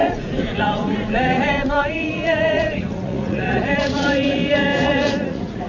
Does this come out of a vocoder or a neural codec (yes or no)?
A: yes